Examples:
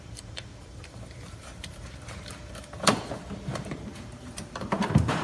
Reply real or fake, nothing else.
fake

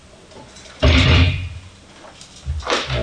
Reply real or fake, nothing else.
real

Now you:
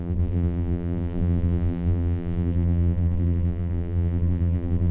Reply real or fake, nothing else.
fake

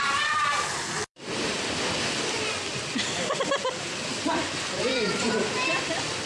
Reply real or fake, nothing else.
fake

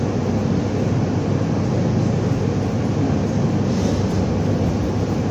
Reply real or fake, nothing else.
real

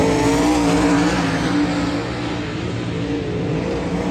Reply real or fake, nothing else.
real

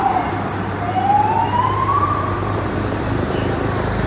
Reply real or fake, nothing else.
fake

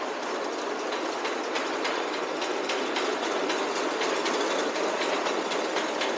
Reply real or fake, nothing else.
real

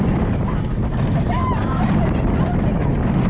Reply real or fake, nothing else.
real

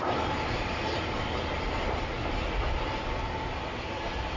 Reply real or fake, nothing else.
real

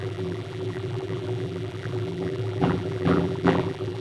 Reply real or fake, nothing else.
fake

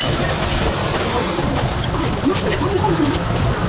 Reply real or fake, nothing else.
real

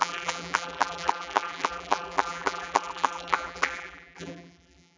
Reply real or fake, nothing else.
fake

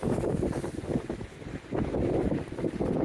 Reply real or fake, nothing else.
real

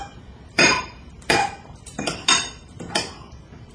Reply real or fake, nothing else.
fake